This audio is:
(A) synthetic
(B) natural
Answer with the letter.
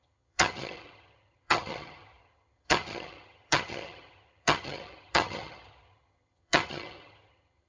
A